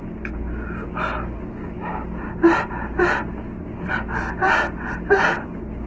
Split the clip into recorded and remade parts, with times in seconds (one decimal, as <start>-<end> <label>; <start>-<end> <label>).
0.0-5.9 recorded